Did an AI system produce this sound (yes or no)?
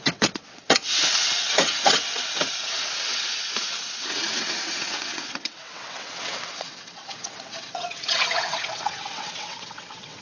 yes